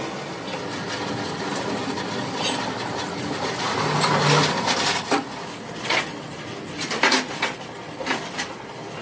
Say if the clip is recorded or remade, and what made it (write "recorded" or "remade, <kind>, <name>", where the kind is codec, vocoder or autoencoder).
recorded